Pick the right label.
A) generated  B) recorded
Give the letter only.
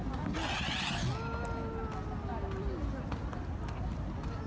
B